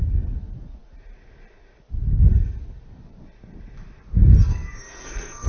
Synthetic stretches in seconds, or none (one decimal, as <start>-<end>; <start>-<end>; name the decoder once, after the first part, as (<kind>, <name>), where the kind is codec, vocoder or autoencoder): 4.5-5.5 (codec, SNAC)